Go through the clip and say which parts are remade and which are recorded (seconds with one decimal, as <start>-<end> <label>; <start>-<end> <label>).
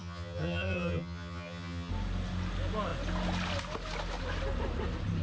0.0-1.9 remade; 1.9-5.2 recorded